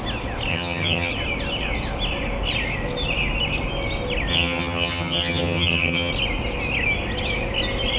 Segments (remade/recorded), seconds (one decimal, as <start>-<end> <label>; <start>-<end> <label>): 0.0-0.5 recorded; 0.5-1.1 remade; 1.1-4.3 recorded; 4.3-6.1 remade; 6.1-8.0 recorded